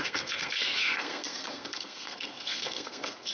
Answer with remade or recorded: remade